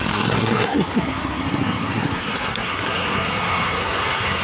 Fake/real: fake